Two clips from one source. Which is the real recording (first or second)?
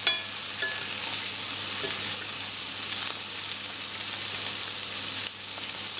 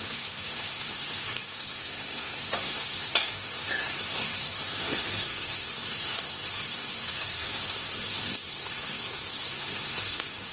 first